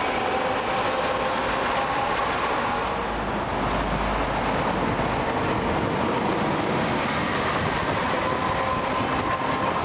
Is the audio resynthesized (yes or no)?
no